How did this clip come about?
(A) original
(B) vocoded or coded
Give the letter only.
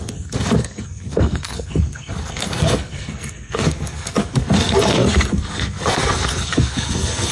B